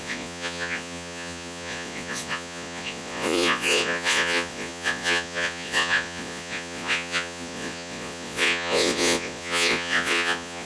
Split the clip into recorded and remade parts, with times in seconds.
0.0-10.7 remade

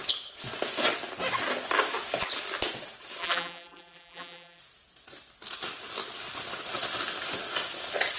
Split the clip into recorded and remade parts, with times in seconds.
0.0-3.2 recorded; 3.2-4.6 remade; 4.6-8.2 recorded

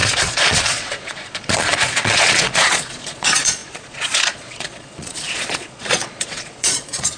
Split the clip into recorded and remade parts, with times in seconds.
0.0-7.2 remade

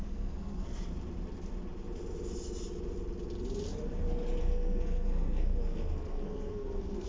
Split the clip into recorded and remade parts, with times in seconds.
0.0-0.9 remade; 0.9-4.4 recorded; 4.4-7.1 remade